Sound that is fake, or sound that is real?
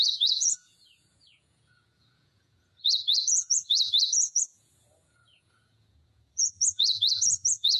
fake